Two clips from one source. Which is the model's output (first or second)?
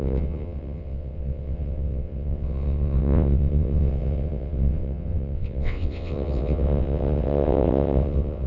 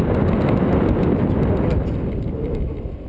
first